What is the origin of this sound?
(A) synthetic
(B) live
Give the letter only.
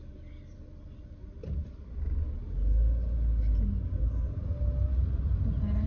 B